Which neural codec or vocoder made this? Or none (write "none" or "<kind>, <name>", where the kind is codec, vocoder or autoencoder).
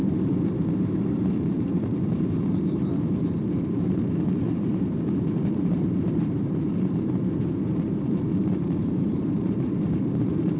vocoder, BigVGAN v2